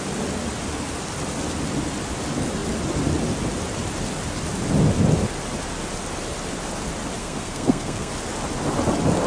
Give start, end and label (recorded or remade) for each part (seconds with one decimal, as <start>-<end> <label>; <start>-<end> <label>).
0.0-7.2 recorded; 7.2-8.1 remade; 8.1-9.3 recorded